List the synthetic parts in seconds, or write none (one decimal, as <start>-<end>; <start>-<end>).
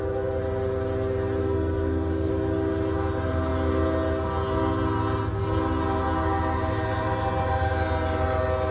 1.4-2.3